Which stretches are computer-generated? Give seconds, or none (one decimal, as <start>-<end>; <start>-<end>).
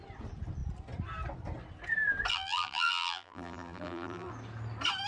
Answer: 2.3-4.3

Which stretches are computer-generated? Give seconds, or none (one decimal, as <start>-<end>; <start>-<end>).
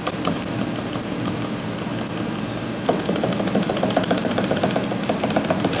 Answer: 0.0-1.9; 3.1-5.8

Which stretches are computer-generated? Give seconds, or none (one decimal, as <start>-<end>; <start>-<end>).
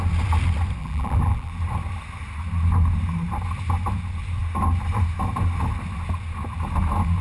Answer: 0.8-1.5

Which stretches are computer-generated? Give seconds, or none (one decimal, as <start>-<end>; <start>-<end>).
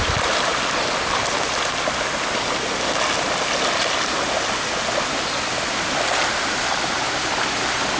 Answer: 0.0-0.5; 5.3-8.0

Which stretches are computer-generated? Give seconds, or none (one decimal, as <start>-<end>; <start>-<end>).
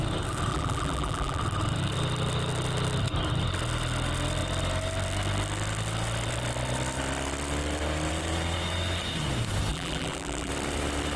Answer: 0.5-1.4; 9.7-10.5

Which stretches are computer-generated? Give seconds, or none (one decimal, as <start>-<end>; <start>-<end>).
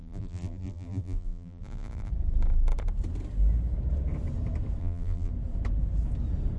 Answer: 0.0-2.1; 4.8-5.3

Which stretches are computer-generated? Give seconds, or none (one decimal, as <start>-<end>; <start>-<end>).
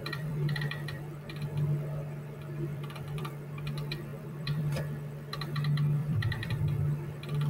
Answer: 0.0-1.1; 2.7-3.3; 4.1-4.8; 6.0-6.6